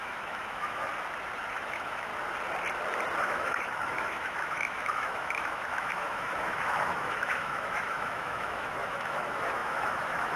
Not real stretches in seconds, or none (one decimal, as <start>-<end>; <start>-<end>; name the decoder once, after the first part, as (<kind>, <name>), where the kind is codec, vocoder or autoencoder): 0.0-0.9 (autoencoder, DAC-VAE); 1.5-2.1; 3.2-10.4